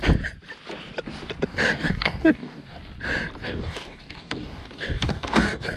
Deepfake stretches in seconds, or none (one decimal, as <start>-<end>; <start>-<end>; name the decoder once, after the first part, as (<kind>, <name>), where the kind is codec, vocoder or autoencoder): 1.5-2.8 (codec, DAC); 3.4-5.8